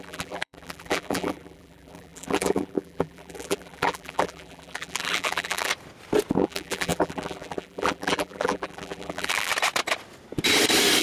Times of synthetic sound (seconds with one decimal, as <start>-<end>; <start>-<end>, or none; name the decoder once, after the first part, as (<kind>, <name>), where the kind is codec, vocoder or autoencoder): 0.0-5.7 (vocoder, BigVGAN v2); 6.3-9.5